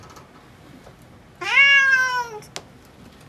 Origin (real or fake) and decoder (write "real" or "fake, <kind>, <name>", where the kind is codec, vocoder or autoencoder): real